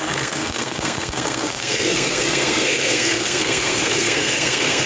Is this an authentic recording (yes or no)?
no